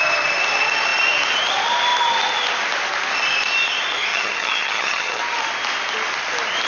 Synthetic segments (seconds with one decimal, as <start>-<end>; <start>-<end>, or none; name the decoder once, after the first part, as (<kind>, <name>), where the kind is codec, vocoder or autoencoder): 4.1-5.2 (vocoder, HiFi-GAN)